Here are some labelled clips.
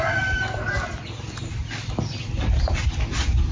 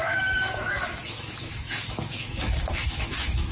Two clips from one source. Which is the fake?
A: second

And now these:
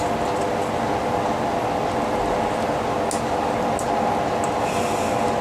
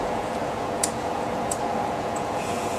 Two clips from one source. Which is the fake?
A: second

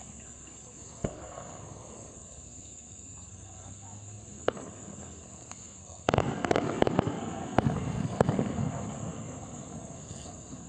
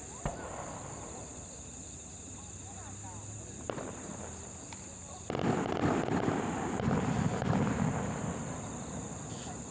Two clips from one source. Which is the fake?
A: first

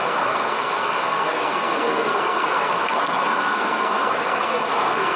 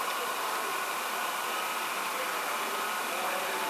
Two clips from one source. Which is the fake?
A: first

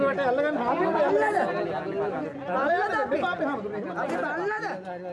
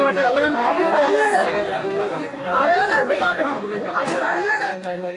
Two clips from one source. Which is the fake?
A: second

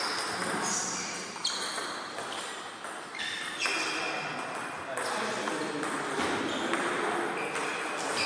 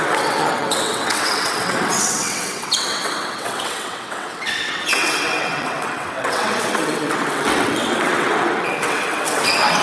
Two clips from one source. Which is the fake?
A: second